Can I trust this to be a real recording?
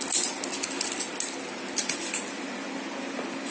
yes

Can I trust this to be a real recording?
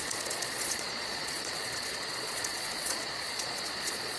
no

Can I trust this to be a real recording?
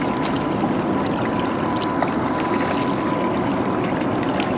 yes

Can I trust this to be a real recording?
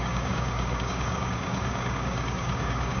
no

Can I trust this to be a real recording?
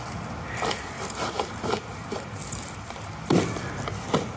yes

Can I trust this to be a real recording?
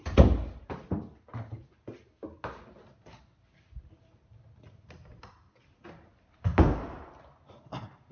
yes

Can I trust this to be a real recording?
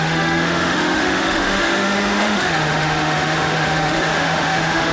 no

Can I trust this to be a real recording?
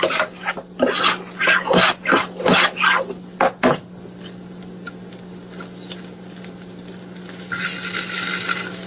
yes